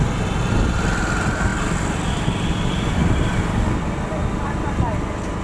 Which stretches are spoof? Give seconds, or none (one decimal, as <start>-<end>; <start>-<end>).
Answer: none